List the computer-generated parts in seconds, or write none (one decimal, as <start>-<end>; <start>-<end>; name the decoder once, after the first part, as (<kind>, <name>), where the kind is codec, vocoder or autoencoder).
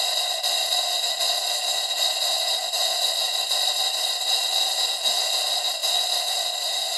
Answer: none